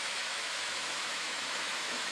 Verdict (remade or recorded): remade